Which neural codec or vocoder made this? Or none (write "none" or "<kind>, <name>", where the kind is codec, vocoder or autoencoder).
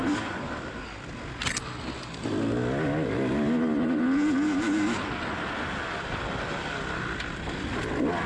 none